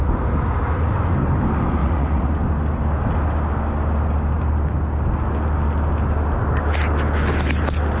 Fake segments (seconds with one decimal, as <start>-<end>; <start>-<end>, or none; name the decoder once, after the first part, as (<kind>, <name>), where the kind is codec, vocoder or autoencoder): 1.8-2.3 (vocoder, Vocos)